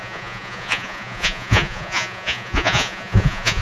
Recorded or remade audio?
remade